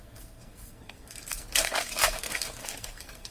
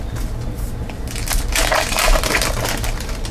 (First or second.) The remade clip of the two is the first